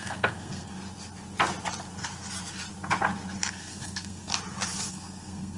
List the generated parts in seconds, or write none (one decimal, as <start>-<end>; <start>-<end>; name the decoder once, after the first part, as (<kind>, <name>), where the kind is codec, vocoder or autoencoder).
0.0-0.7 (codec, SNAC); 3.5-4.3; 4.9-5.6